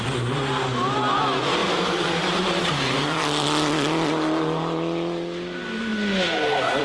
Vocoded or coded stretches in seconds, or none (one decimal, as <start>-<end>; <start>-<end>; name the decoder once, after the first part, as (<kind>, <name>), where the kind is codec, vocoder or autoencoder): 1.6-2.7 (vocoder, BigVGAN v2)